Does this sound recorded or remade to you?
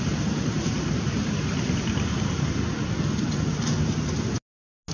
recorded